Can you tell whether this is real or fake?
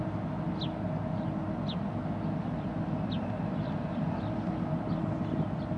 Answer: real